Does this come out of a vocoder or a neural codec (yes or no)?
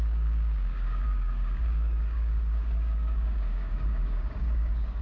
yes